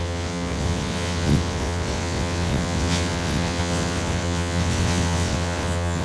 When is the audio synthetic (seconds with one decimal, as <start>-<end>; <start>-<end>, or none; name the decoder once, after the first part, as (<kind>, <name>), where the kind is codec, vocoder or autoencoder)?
0.0-6.0 (vocoder, WaveNeXt)